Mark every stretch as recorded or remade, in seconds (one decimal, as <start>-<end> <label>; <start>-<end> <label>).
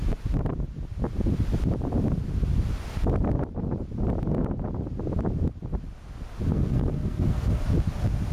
0.0-6.5 recorded; 6.5-7.6 remade; 7.6-8.3 recorded